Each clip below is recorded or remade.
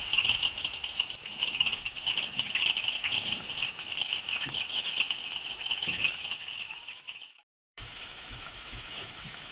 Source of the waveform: remade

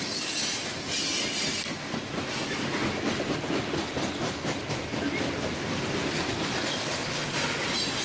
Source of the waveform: recorded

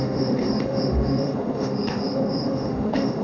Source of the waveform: remade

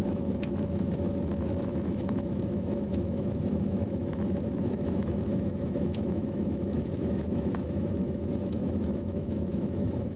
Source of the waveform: remade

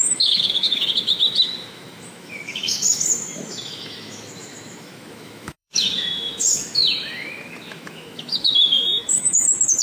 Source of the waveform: remade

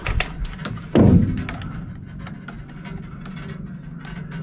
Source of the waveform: recorded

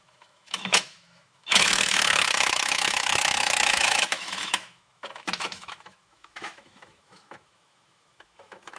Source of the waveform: remade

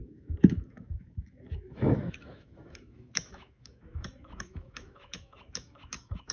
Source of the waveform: remade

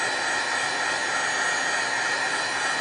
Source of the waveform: recorded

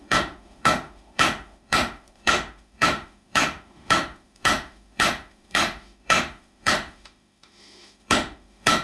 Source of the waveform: remade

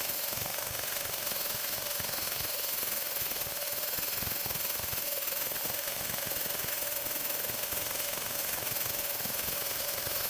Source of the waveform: remade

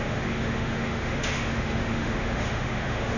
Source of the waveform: remade